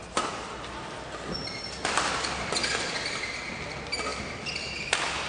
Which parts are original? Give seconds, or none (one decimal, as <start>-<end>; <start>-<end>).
0.0-2.6; 3.3-5.3